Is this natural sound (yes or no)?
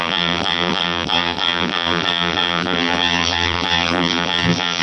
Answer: no